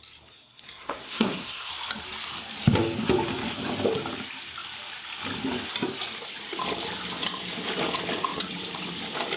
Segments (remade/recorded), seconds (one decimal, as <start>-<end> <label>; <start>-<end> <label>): 0.0-0.4 recorded; 0.4-1.7 remade; 1.7-9.4 recorded